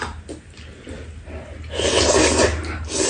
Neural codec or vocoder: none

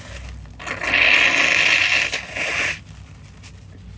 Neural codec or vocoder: none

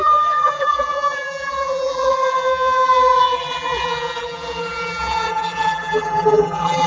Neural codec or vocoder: vocoder, BigVGAN v2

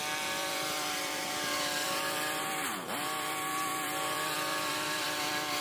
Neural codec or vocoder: vocoder, BigVGAN v2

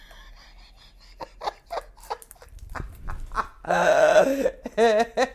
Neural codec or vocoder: none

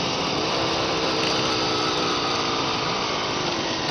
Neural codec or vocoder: none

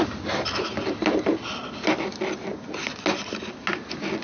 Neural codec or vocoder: none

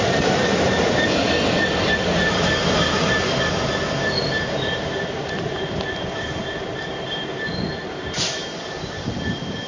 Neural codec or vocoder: vocoder, BigVGAN v2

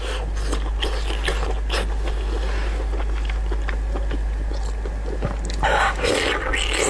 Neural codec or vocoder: none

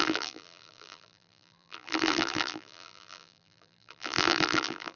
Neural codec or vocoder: vocoder, BigVGAN v2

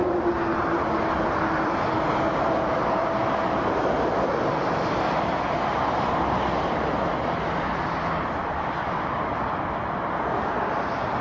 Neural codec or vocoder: vocoder, BigVGAN v2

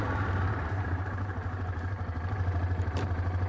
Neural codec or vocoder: vocoder, BigVGAN v2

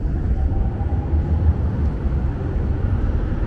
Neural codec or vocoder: none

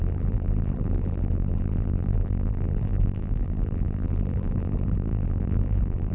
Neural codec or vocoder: vocoder, BigVGAN v2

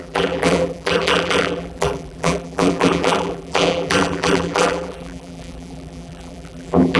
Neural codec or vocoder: vocoder, BigVGAN v2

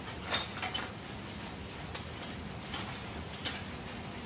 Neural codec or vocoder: none